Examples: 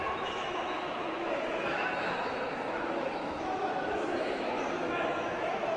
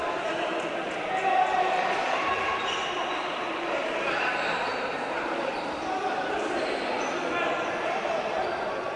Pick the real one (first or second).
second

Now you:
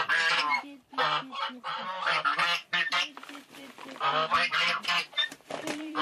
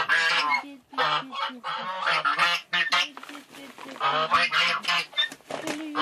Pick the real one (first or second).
second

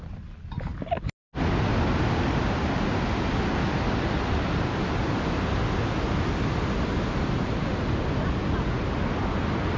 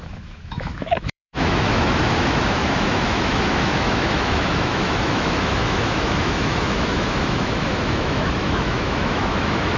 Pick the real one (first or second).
first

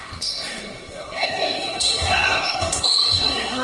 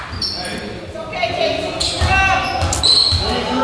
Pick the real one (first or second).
second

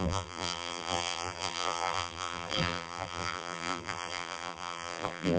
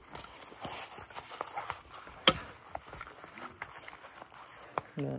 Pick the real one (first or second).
second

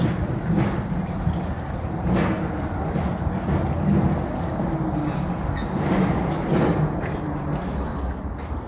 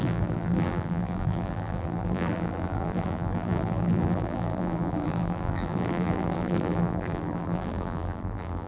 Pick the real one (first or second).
first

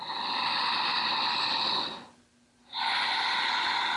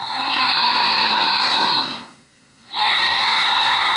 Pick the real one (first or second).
first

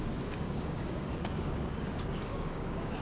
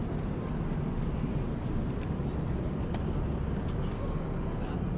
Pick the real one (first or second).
second